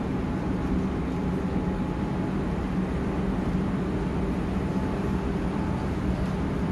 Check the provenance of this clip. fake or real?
real